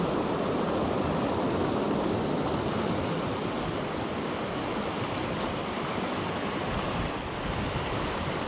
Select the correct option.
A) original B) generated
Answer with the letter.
A